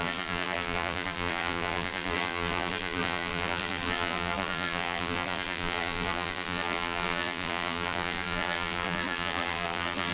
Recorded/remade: remade